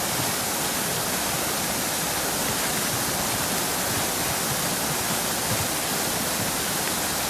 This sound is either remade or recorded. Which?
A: recorded